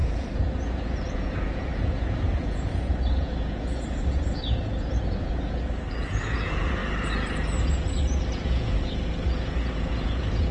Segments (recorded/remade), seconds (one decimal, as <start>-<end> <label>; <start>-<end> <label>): 0.0-6.8 remade; 6.8-7.7 recorded; 7.7-10.5 remade